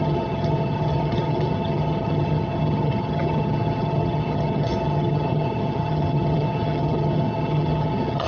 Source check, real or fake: fake